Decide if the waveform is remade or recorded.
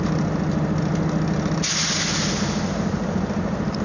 recorded